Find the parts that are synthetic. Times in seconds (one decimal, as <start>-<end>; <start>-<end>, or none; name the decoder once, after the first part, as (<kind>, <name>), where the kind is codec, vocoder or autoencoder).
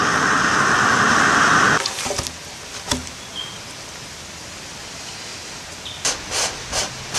none